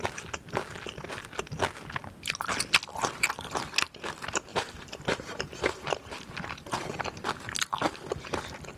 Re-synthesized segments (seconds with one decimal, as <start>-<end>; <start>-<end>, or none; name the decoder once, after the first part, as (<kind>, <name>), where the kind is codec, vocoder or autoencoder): 4.5-6.1 (vocoder, BigVGAN v2)